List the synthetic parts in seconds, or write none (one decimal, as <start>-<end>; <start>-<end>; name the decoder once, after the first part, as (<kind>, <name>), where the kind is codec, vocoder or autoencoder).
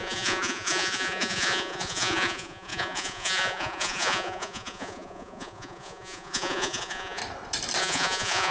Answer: 0.0-7.2 (vocoder, Vocos); 7.8-8.5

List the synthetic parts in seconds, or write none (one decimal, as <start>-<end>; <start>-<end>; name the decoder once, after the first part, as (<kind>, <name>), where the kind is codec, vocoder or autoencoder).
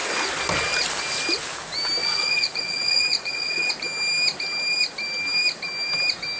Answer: 2.0-3.7 (vocoder, Vocos)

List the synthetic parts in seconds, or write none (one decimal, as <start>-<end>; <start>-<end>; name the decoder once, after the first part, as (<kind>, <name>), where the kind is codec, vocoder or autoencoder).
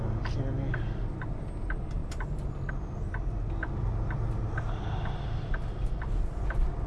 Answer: none